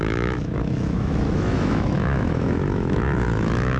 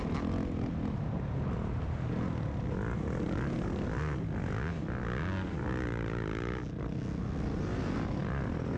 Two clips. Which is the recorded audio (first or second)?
second